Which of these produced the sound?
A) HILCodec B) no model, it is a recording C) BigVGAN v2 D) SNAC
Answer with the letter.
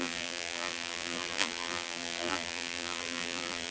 C